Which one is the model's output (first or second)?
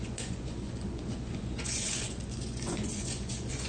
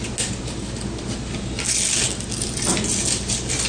first